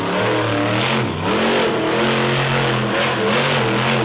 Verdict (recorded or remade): recorded